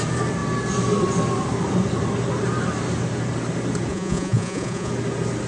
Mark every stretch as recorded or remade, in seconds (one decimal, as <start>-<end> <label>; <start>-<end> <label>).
0.0-3.9 recorded; 3.9-4.9 remade; 4.9-5.5 recorded